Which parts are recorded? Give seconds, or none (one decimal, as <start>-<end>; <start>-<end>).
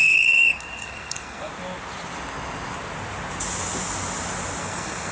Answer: 1.5-4.6